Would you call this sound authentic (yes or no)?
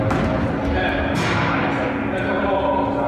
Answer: yes